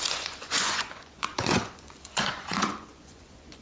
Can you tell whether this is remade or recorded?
remade